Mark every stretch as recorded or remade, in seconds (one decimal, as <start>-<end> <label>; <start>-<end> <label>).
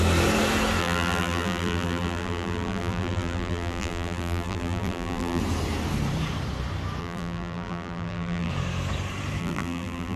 0.0-0.8 recorded; 0.8-5.4 remade; 5.4-7.0 recorded; 7.0-8.5 remade; 8.5-9.4 recorded; 9.4-10.2 remade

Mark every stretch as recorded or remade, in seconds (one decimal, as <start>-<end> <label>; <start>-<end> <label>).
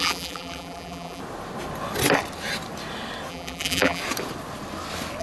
0.0-1.2 remade; 1.2-3.3 recorded; 3.3-4.0 remade; 4.0-5.2 recorded